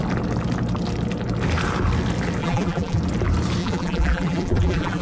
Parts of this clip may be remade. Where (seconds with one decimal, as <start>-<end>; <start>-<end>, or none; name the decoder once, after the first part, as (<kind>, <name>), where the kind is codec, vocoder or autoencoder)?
2.4-3.0 (vocoder, BigVGAN v2); 3.6-5.0